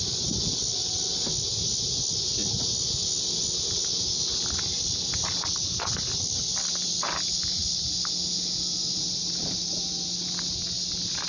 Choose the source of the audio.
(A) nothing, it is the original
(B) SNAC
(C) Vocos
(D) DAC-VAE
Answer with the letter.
A